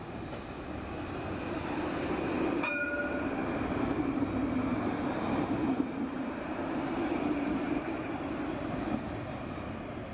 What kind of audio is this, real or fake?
real